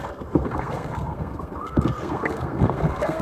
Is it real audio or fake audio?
fake